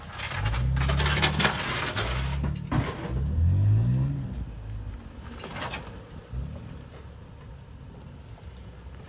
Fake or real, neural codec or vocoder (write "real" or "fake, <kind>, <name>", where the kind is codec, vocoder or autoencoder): real